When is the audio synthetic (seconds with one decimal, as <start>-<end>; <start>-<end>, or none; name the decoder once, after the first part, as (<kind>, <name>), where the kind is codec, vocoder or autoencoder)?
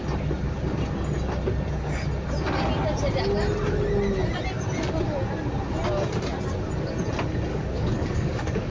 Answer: 7.5-8.7 (codec, DAC)